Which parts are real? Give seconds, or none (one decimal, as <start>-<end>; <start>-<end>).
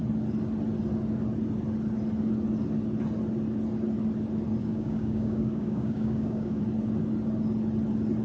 0.0-4.6; 6.6-8.2